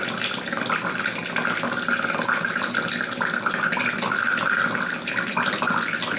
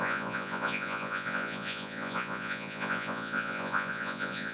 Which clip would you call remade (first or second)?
second